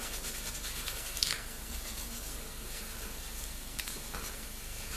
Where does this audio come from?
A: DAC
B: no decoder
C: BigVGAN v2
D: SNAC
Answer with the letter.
D